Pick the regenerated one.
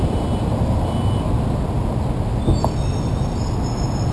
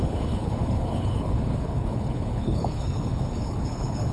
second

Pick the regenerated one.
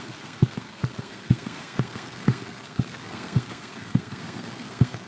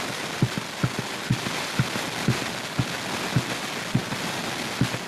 first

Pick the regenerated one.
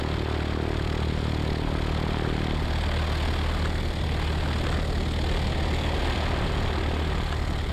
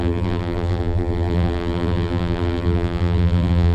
second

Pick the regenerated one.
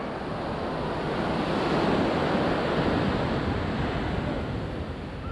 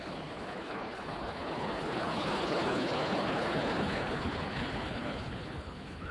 second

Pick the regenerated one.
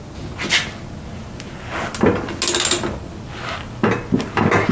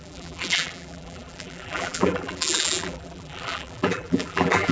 second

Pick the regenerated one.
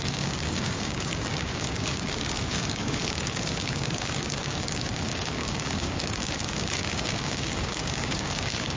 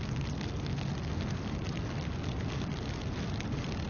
first